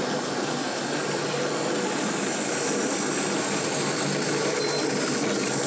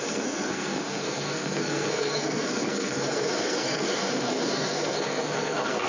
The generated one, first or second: second